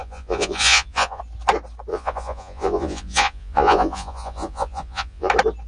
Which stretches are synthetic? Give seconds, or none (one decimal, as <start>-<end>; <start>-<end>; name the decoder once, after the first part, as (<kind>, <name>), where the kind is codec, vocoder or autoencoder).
0.0-1.2 (vocoder, Vocos); 1.9-5.3